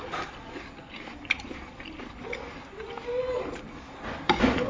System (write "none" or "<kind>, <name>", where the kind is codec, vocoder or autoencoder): none